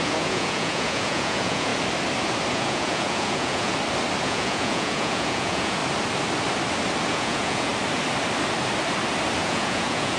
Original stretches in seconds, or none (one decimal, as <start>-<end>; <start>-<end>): 1.7-2.5; 3.7-4.2; 5.8-7.1; 7.7-9.4